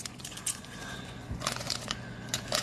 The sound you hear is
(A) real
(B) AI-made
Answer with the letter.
B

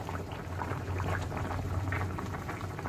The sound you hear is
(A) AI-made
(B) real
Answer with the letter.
A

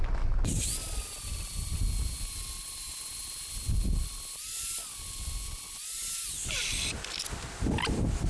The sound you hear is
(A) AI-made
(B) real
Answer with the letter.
B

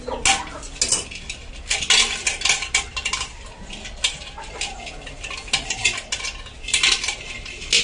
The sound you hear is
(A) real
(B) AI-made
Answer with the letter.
A